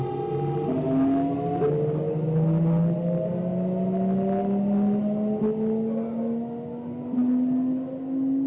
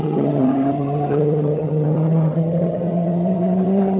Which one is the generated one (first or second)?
second